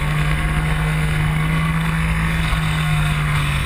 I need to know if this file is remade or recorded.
remade